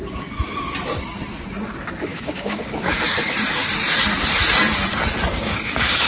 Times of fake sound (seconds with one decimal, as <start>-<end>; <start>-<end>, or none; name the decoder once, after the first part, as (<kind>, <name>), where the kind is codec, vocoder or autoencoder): 2.1-2.9 (codec, DAC); 5.3-6.1